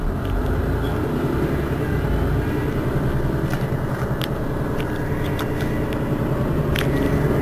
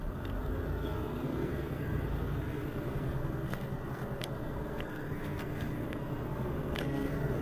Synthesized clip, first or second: second